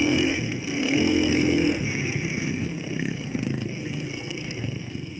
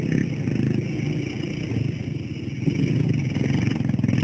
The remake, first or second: first